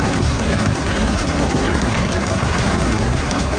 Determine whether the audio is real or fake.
fake